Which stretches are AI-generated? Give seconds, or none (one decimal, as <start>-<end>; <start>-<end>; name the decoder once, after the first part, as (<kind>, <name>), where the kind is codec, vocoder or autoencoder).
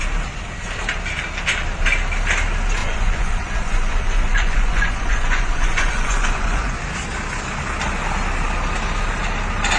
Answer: 2.8-6.8 (vocoder, Vocos)